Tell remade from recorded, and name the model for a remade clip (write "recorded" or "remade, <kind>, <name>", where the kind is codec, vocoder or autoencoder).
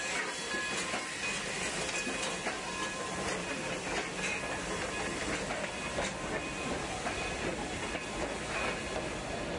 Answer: recorded